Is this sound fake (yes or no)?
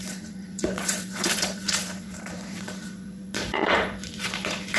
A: yes